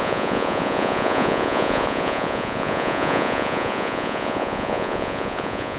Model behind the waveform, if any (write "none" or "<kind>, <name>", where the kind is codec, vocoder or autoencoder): vocoder, Vocos